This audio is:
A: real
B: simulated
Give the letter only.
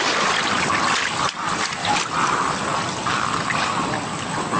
A